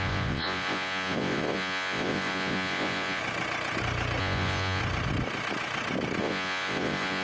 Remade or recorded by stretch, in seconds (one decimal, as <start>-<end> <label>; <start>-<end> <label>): 0.0-3.2 remade; 3.2-4.2 recorded; 4.2-4.8 remade; 4.8-6.2 recorded; 6.2-7.2 remade